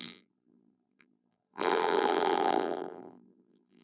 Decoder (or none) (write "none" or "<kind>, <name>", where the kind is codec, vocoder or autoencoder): vocoder, BigVGAN v2